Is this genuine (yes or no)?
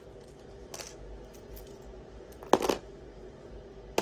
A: yes